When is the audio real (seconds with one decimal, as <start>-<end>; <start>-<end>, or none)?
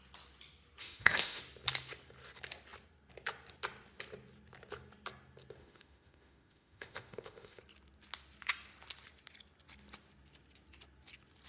0.0-0.8; 1.4-5.6; 7.6-11.5